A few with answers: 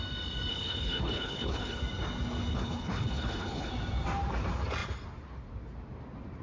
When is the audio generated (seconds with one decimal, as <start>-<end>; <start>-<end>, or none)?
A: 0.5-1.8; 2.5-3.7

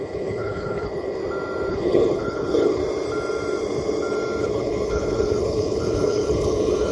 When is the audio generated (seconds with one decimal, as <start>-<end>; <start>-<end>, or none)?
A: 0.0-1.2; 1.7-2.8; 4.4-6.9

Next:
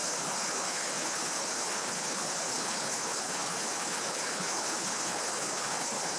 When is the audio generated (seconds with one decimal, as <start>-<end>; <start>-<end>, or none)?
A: 0.0-6.2

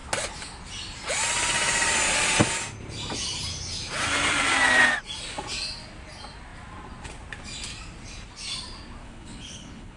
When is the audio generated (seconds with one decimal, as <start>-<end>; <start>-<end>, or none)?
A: 9.0-10.0

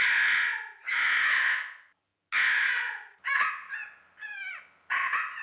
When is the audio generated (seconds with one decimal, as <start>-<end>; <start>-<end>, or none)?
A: none